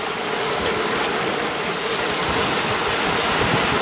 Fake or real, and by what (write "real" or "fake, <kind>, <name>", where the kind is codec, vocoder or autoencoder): real